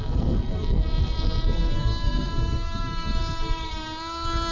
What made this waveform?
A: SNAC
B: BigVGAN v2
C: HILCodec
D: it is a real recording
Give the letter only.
A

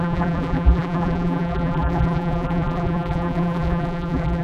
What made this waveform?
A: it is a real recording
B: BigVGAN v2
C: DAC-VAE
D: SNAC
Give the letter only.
B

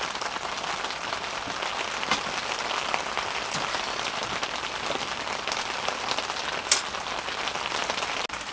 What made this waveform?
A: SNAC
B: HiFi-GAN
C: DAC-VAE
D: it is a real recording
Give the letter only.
D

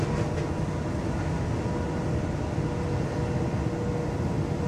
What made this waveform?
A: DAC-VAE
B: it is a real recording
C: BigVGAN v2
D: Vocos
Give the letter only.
B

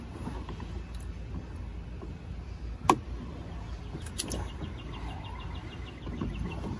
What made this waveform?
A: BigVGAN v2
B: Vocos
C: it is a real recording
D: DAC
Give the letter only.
C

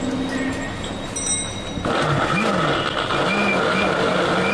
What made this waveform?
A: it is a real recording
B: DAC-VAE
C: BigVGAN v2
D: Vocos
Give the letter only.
A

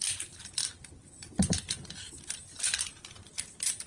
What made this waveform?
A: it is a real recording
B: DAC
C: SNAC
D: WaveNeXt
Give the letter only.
A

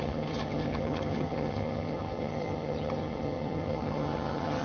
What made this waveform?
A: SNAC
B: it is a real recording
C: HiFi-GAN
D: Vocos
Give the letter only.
C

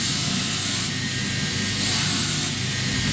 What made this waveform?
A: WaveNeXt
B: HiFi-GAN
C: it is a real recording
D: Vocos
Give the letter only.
C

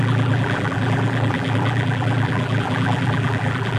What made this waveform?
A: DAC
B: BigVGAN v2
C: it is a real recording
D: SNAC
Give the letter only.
B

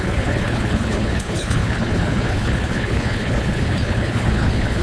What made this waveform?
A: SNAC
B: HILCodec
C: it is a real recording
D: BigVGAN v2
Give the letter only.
B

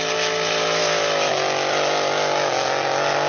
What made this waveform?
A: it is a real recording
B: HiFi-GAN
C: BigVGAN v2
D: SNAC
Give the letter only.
A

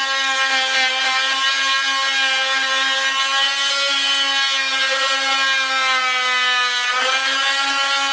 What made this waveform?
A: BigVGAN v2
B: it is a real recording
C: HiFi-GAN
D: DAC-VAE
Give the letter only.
B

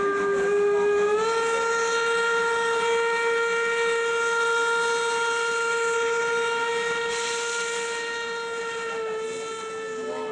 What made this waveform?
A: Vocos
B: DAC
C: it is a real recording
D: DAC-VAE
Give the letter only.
C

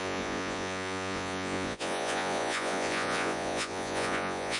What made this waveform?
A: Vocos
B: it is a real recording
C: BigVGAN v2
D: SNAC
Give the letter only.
A